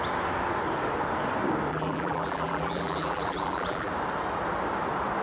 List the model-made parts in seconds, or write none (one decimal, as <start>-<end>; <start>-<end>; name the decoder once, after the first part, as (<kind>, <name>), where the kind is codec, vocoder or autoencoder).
1.7-3.9 (vocoder, BigVGAN v2)